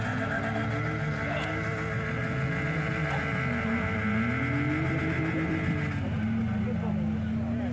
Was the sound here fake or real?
real